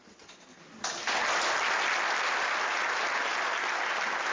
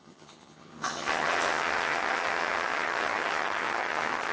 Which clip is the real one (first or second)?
first